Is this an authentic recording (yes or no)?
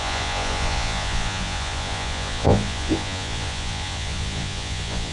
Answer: no